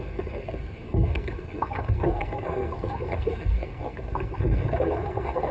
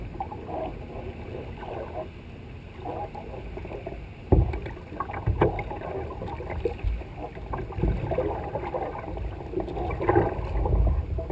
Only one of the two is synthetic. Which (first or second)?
first